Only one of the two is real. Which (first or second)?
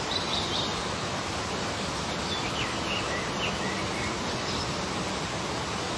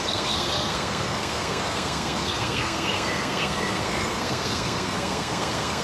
first